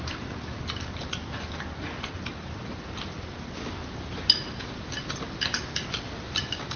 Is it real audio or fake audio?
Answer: real